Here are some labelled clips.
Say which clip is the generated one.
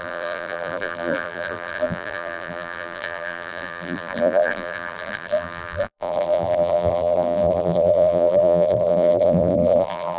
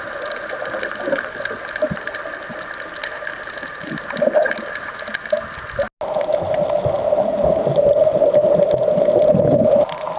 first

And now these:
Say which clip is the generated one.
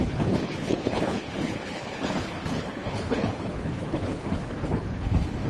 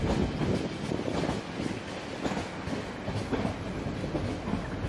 first